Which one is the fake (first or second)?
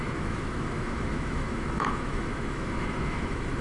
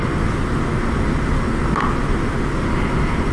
first